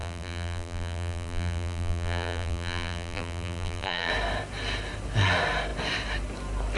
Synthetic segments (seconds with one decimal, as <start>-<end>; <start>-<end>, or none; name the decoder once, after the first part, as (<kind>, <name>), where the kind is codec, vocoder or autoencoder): 0.0-4.1 (vocoder, BigVGAN v2)